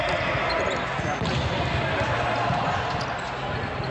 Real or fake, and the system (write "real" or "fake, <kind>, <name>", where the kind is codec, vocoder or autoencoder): real